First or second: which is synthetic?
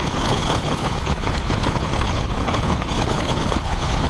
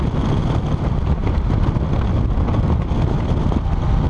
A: first